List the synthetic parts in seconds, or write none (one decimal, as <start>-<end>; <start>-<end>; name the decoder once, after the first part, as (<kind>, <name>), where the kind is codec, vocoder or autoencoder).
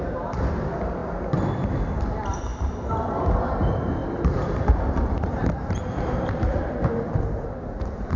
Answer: 4.0-5.7 (vocoder, BigVGAN v2)